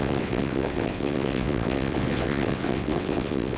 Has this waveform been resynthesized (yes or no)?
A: yes